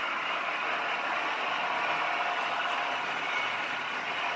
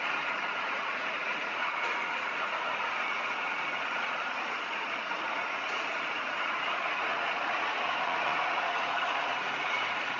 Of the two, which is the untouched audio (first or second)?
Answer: first